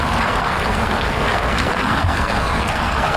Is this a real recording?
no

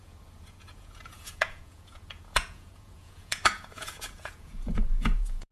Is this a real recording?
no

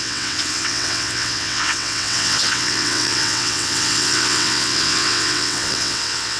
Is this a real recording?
no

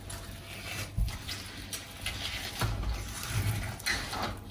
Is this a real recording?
yes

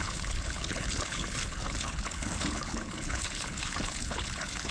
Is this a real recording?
no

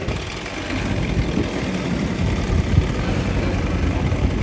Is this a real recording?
yes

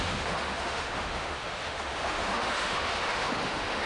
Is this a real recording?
no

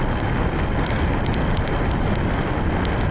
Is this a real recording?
yes